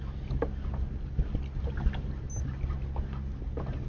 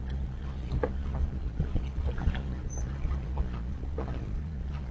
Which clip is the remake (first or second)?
second